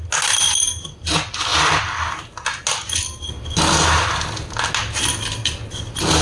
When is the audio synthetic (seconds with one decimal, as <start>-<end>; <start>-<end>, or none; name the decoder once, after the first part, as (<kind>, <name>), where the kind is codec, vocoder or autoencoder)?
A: none